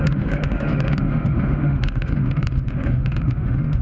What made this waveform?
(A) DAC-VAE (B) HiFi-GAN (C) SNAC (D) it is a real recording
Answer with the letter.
A